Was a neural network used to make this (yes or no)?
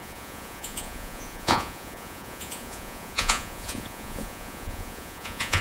yes